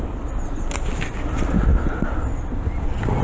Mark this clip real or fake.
real